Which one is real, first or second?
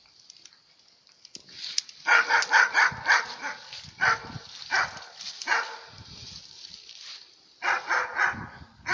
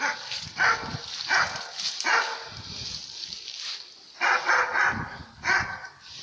second